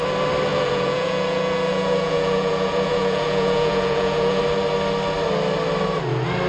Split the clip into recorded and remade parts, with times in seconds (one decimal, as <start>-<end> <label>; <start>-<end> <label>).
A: 0.0-0.5 recorded; 0.5-4.4 remade; 4.4-6.5 recorded